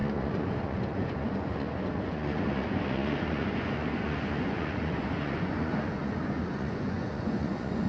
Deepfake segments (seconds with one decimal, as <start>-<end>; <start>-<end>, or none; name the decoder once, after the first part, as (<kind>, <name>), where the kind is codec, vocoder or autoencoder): 0.0-7.9 (vocoder, Vocos)